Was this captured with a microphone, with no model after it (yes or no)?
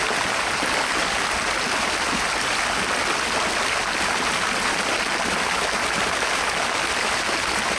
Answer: yes